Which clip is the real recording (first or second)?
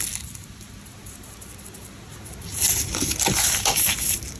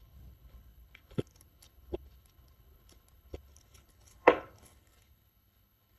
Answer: first